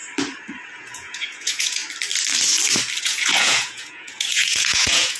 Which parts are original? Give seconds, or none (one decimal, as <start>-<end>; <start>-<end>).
0.0-0.7; 1.8-3.0